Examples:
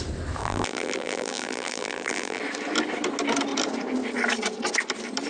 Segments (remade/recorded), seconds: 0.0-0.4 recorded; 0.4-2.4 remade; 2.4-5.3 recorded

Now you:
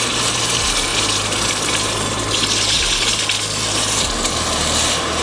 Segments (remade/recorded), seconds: 0.0-5.2 recorded

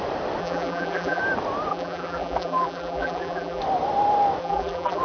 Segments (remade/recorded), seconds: 0.0-0.4 recorded; 0.4-1.2 remade; 1.2-1.7 recorded; 1.7-3.6 remade; 3.6-4.4 recorded; 4.4-5.0 remade